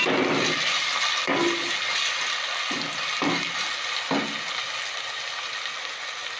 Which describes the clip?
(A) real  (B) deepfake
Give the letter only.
A